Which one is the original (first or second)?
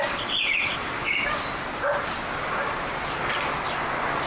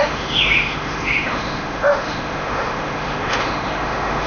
first